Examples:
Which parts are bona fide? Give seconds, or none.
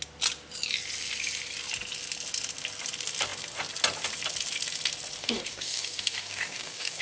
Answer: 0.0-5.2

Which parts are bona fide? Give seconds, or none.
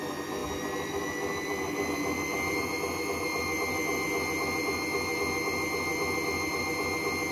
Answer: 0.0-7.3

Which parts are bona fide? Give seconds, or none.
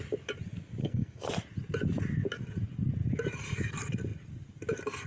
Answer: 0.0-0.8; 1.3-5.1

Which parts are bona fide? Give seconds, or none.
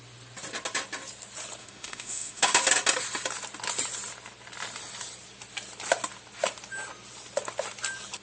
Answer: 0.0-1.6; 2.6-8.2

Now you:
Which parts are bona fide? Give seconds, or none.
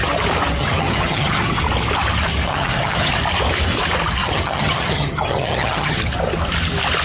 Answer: 0.0-0.6; 1.6-2.5; 3.1-4.2; 6.0-7.0